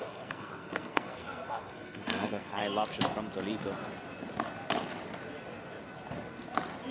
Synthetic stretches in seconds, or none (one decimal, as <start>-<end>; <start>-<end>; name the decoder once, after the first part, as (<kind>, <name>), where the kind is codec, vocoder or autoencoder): 0.0-2.6 (codec, SNAC)